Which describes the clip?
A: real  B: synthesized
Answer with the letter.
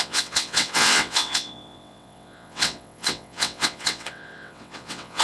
B